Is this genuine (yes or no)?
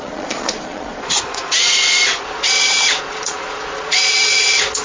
no